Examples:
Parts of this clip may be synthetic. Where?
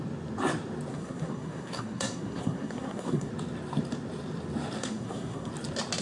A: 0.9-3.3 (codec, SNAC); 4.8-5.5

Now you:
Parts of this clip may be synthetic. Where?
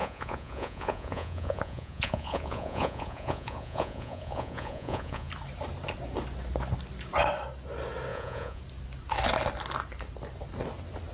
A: 0.0-5.3 (vocoder, Vocos); 8.1-8.6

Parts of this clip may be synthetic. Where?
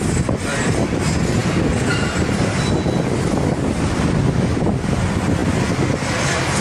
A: none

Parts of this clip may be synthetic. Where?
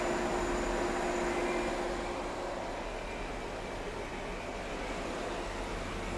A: none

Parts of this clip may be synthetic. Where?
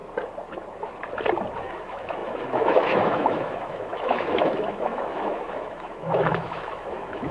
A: 1.6-7.3 (autoencoder, DAC-VAE)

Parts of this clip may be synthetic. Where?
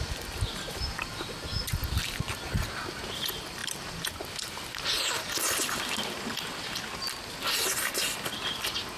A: none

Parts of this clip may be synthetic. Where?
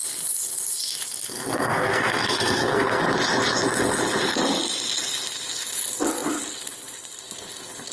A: 1.2-3.0 (codec, SNAC)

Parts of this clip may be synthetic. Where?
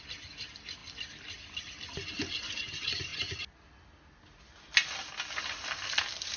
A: none